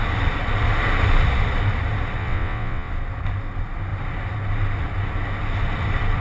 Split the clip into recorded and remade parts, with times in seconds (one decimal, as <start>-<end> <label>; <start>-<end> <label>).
0.0-2.2 recorded; 2.2-2.9 remade; 2.9-6.2 recorded